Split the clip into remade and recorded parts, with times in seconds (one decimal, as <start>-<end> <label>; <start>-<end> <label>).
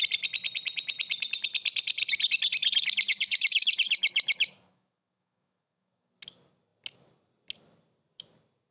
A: 0.0-3.1 recorded; 3.1-6.1 remade; 6.1-8.7 recorded